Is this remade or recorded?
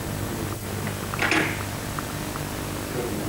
recorded